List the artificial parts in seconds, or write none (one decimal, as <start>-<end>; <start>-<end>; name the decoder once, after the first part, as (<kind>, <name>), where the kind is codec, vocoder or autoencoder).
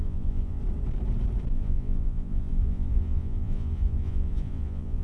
0.0-0.6 (vocoder, Vocos); 1.5-5.0